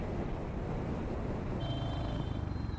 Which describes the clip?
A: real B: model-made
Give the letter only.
A